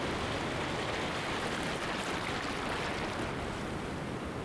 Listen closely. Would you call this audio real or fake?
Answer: real